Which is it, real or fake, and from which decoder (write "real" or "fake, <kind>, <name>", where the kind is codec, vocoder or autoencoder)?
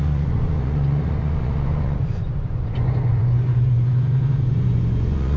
fake, vocoder, Vocos